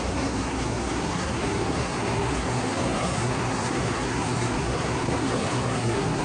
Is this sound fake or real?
fake